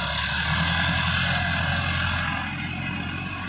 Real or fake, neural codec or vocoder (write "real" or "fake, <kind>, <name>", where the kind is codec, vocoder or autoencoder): real